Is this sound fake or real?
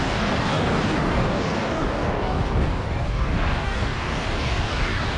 fake